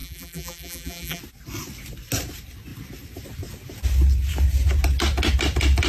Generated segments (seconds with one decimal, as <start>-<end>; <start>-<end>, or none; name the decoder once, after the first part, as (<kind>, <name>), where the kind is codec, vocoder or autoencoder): 0.0-1.2 (vocoder, BigVGAN v2)